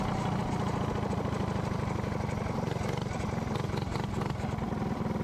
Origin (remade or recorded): recorded